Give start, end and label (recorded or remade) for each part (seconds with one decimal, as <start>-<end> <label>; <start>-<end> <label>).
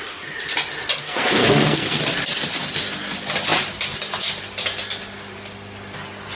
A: 0.0-1.0 recorded; 1.0-2.0 remade; 2.0-6.3 recorded